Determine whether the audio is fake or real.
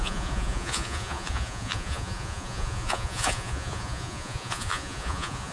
fake